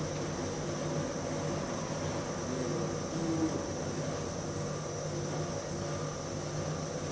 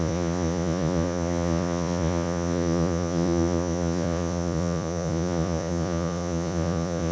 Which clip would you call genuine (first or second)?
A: first